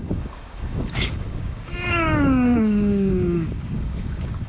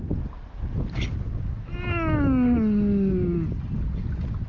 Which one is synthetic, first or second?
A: first